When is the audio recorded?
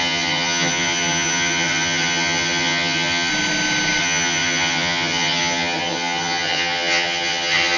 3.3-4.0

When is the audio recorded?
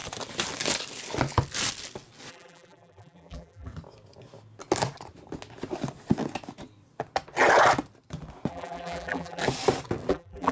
0.0-2.3; 3.7-8.5; 9.4-10.1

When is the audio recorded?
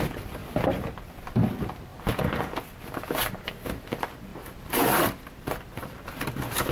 0.4-0.9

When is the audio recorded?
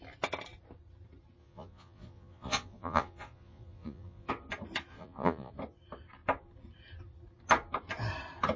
0.0-1.4; 4.3-4.9; 5.5-8.6